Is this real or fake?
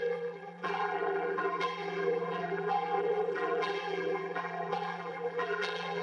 fake